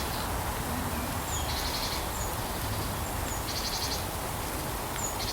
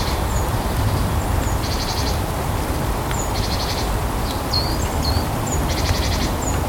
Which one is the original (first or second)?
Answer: first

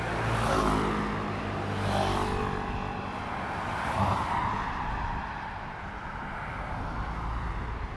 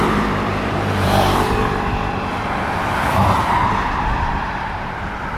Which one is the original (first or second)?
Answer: first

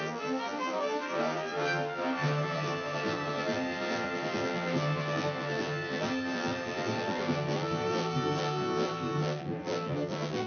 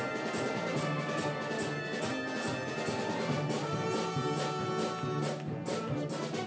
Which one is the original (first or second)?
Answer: second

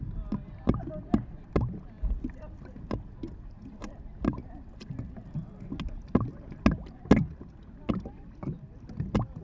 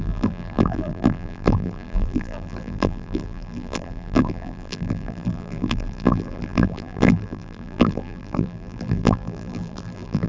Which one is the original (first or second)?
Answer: first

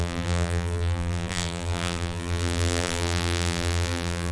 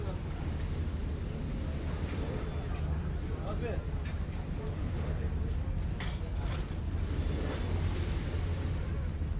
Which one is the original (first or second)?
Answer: second